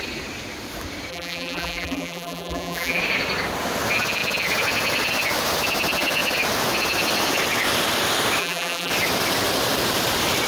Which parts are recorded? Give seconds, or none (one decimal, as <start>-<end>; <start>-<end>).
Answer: 0.0-1.1; 3.0-8.4; 8.9-10.5